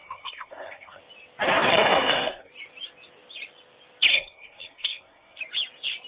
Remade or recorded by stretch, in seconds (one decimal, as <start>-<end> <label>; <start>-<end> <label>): 0.0-1.0 remade; 1.0-1.7 recorded; 1.7-2.5 remade; 2.5-4.1 recorded; 4.1-5.4 remade; 5.4-6.1 recorded